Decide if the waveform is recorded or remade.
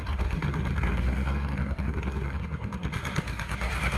remade